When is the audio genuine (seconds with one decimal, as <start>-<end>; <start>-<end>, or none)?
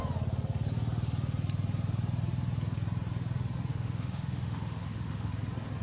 0.0-3.7; 5.3-5.8